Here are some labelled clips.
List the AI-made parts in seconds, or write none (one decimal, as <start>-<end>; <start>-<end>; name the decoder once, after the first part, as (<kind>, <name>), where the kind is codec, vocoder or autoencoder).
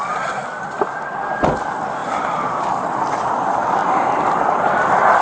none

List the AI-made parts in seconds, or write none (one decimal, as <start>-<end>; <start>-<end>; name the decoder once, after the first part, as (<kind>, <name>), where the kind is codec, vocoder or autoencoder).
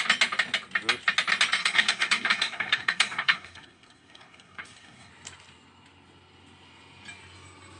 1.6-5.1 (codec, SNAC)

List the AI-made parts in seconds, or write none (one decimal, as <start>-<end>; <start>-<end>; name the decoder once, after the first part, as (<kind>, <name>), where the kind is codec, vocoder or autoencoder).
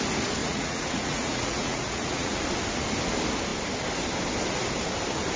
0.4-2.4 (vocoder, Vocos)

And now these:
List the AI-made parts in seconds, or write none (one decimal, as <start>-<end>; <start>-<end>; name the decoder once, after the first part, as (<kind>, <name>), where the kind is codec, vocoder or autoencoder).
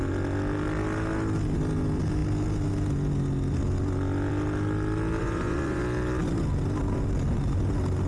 5.2-5.8 (vocoder, Vocos)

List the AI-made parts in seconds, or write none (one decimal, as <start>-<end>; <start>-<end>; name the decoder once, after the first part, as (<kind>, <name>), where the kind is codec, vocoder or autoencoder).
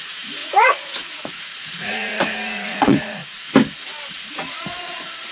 0.0-3.2 (vocoder, Vocos); 4.1-5.3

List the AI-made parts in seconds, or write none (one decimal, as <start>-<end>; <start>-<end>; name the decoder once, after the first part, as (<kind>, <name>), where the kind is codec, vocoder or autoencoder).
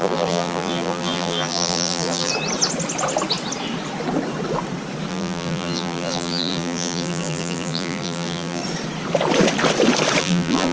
0.0-2.3 (vocoder, BigVGAN v2); 5.1-8.6; 10.2-10.7